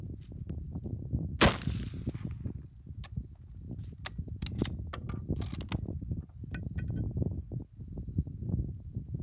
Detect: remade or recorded recorded